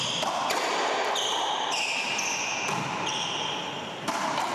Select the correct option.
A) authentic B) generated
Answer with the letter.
A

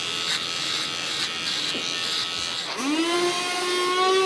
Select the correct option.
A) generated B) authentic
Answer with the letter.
B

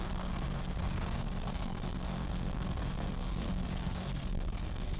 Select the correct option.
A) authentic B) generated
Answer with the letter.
B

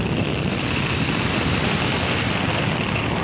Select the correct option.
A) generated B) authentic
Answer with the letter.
B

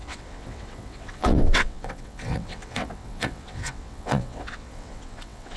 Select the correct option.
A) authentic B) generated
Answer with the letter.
B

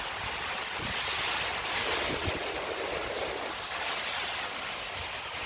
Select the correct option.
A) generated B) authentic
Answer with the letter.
B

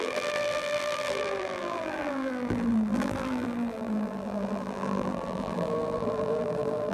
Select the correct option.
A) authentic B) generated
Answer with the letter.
B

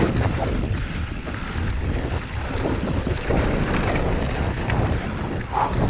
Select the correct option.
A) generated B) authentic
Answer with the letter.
A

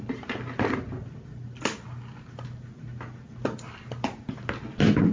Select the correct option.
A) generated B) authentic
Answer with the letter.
B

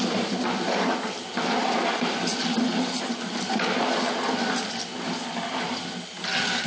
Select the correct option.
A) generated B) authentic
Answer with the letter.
B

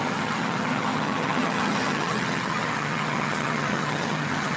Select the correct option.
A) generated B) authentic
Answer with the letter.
A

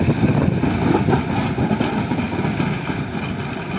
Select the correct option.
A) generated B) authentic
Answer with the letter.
B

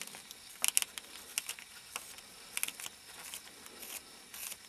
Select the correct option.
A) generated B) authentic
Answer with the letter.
B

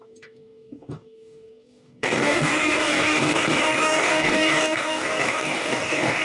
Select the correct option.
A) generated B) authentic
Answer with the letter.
A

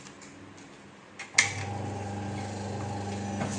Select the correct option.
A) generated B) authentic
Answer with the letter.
B